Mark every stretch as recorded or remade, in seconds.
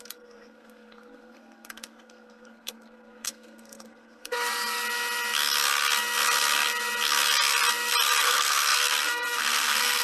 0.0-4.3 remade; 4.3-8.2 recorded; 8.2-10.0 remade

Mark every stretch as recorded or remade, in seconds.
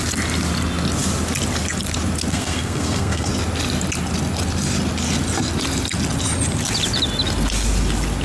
0.0-2.3 recorded; 2.3-3.3 remade; 3.3-8.2 recorded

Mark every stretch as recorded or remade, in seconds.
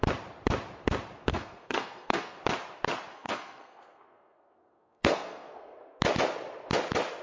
0.0-1.3 recorded; 1.3-2.4 remade; 2.4-3.1 recorded; 3.1-6.0 remade; 6.0-7.2 recorded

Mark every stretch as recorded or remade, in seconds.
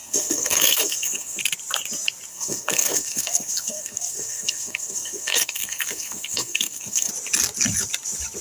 0.0-1.4 remade; 1.4-2.3 recorded; 2.3-7.1 remade; 7.1-8.4 recorded